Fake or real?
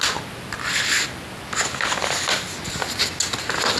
real